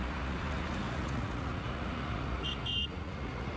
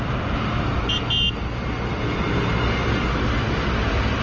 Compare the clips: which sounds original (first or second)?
second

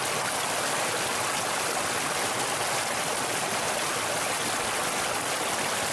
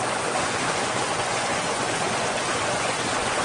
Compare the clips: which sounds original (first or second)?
first